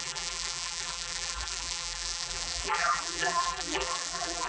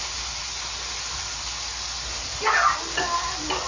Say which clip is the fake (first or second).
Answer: first